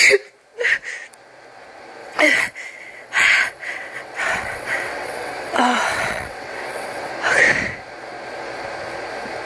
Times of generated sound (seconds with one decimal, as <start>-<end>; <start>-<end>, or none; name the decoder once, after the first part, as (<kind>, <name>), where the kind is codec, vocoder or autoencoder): 2.0-7.1 (vocoder, WaveNeXt)